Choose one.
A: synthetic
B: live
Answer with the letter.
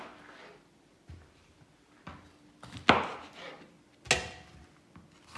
B